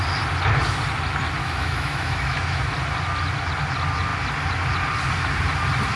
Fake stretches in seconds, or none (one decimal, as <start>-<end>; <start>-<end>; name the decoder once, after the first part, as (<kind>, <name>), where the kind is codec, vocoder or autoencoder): 1.4-2.6 (autoencoder, DAC-VAE)